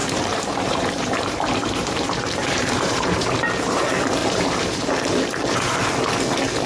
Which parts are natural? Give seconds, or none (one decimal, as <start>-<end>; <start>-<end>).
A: 3.8-4.2; 4.9-6.7